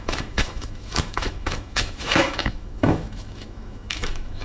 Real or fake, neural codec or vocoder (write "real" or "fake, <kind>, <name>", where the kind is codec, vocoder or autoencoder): fake, autoencoder, DAC-VAE